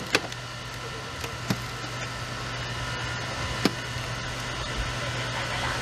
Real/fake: real